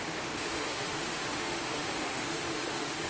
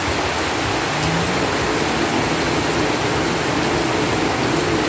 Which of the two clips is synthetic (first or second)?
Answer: first